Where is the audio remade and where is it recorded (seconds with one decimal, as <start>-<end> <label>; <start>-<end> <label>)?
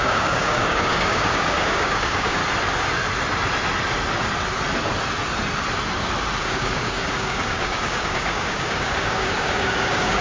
0.0-2.4 remade; 2.4-6.4 recorded; 6.4-10.2 remade